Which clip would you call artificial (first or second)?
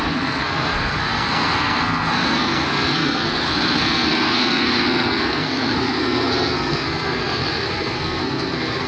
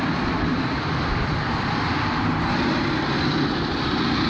first